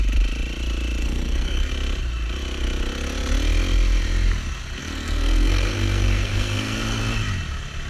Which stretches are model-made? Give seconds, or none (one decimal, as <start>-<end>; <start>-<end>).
1.0-1.7; 4.8-7.0